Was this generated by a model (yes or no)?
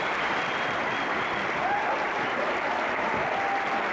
no